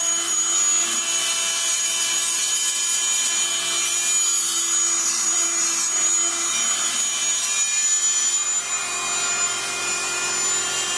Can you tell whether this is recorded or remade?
recorded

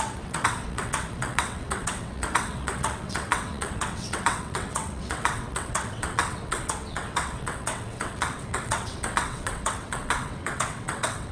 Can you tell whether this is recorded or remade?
remade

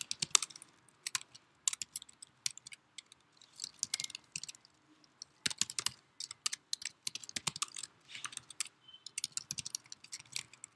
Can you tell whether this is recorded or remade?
recorded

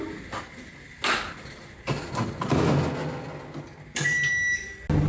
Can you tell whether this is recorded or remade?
recorded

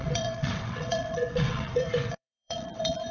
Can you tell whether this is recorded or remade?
remade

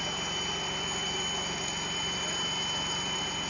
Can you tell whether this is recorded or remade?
recorded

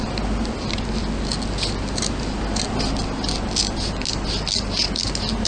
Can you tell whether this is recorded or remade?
recorded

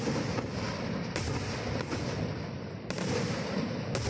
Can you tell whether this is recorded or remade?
recorded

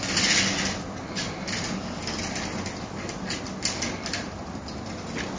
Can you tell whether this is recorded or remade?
recorded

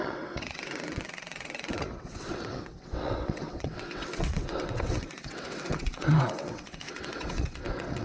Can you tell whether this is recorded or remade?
remade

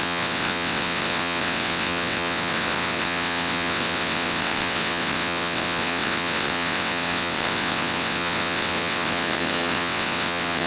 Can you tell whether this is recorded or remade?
remade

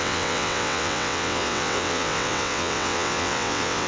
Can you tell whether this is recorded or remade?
remade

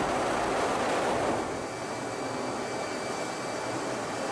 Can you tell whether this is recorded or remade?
recorded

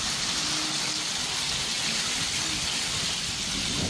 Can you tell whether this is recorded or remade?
recorded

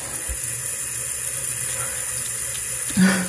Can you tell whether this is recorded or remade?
recorded